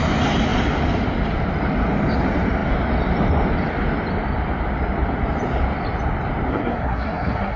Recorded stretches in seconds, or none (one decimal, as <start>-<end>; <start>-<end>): 0.0-6.5